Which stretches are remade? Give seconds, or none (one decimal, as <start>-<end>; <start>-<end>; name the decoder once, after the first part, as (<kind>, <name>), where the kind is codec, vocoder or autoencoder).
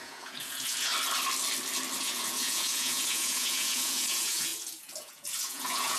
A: 0.0-0.9 (vocoder, Vocos); 2.0-6.0